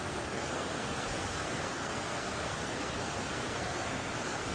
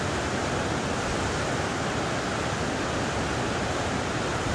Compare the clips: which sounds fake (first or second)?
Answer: first